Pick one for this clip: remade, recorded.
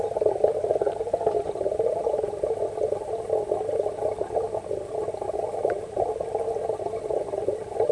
recorded